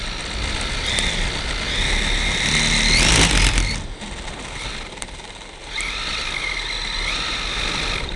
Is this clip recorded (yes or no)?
yes